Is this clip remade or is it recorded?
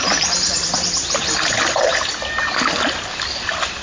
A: recorded